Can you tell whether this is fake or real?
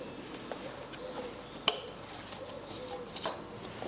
real